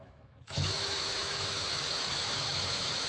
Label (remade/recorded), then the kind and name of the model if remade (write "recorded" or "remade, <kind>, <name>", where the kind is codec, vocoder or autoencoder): remade, autoencoder, DAC-VAE